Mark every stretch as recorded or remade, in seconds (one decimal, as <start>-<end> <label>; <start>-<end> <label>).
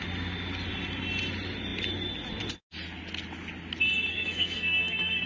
0.0-4.1 recorded; 4.1-5.3 remade